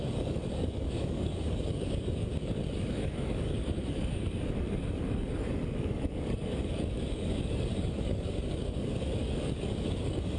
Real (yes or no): no